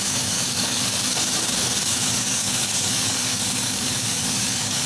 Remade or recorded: remade